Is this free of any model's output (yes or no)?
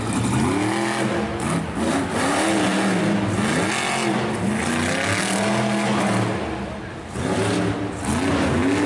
yes